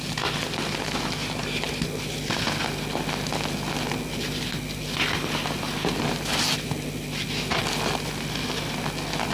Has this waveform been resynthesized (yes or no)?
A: no